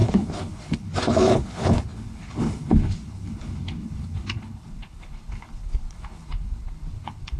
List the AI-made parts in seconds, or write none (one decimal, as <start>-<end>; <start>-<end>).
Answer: 0.0-7.4